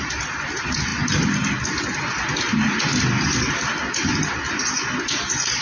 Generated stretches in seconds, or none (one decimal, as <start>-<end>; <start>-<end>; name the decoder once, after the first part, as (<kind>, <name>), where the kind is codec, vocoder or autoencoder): none